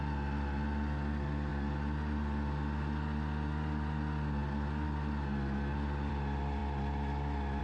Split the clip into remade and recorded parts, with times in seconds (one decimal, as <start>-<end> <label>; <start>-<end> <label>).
0.0-7.6 recorded